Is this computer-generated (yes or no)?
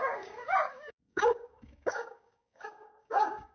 yes